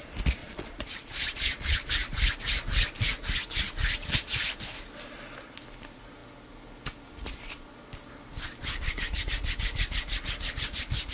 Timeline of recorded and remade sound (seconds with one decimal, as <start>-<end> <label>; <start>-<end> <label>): 0.0-0.4 recorded; 0.4-1.9 remade; 1.9-11.1 recorded